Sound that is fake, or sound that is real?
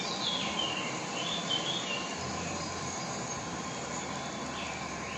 fake